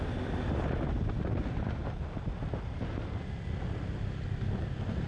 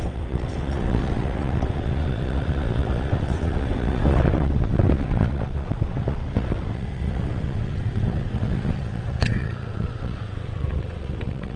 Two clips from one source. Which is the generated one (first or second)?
second